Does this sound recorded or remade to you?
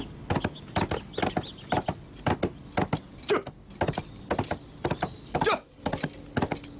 recorded